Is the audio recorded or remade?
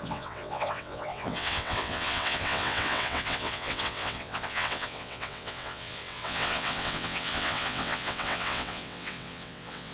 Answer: remade